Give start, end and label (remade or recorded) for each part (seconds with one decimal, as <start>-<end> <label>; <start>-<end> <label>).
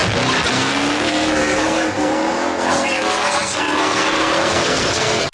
0.0-0.5 recorded; 0.5-5.3 remade